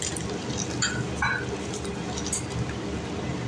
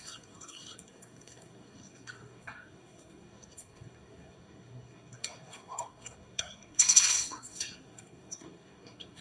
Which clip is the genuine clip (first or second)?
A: first